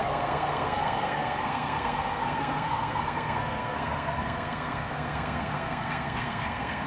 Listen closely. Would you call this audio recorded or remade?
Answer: remade